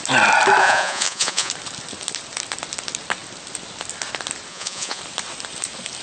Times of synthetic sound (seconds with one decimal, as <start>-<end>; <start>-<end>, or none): 0.6-1.5; 4.5-5.0